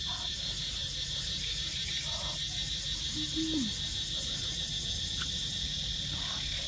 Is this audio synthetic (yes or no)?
no